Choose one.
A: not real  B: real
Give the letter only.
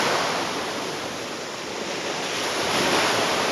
B